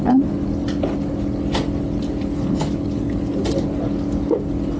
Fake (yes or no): no